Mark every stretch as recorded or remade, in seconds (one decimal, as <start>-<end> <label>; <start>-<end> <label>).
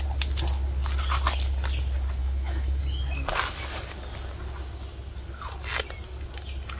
0.0-2.2 recorded; 2.2-2.8 remade; 2.8-6.8 recorded